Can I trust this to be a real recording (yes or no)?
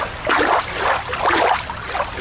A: yes